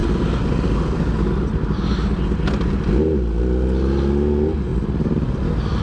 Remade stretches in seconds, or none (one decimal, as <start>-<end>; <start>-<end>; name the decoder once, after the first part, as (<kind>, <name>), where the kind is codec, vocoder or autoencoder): none